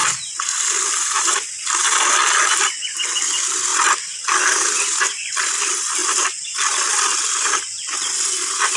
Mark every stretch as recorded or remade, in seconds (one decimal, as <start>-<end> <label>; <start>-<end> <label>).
0.0-8.8 recorded